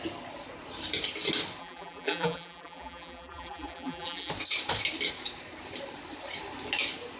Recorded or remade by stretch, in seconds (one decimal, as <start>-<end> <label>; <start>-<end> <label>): 0.0-1.6 recorded; 1.6-4.3 remade; 4.3-7.2 recorded